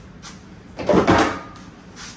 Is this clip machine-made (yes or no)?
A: no